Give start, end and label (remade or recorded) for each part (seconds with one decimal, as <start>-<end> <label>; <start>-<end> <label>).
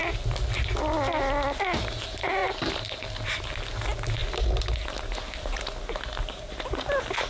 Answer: 0.0-7.3 recorded